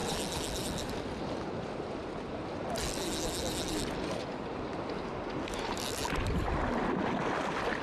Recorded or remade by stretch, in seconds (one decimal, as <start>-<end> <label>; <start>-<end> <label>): 0.0-7.8 recorded